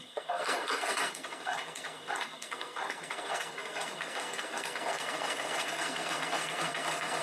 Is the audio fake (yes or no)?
yes